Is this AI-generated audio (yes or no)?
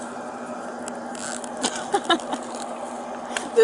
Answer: no